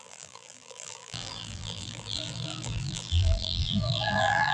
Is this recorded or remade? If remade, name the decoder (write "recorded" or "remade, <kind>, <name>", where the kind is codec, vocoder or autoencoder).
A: remade, vocoder, BigVGAN v2